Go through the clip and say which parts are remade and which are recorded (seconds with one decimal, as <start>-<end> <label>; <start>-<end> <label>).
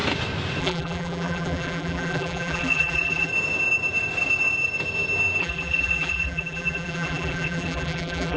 0.0-0.6 recorded; 0.6-3.3 remade; 3.3-5.4 recorded; 5.4-8.4 remade